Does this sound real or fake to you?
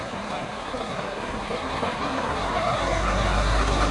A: fake